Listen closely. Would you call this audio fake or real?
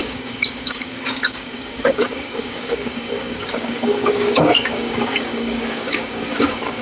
fake